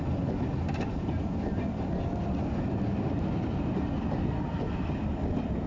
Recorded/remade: recorded